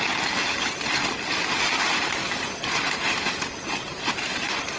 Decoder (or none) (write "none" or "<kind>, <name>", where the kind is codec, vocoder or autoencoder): none